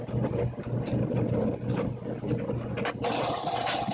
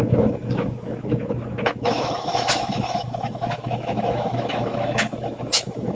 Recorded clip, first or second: first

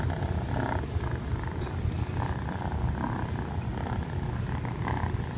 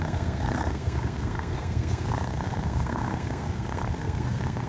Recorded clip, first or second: first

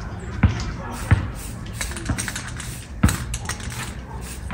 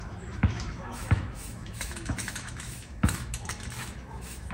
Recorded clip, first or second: first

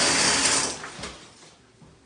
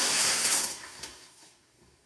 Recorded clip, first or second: first